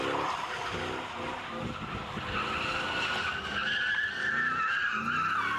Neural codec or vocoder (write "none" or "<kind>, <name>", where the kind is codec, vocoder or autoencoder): none